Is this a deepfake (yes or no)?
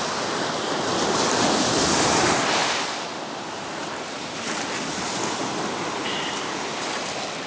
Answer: no